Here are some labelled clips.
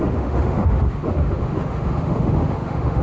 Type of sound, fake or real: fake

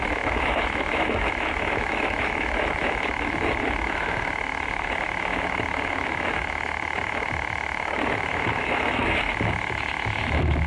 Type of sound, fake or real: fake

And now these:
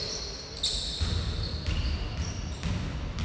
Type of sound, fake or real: real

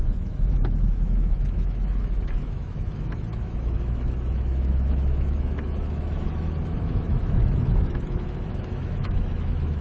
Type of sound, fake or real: fake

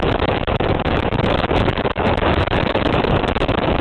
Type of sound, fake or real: fake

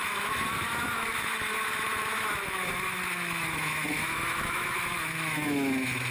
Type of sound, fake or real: fake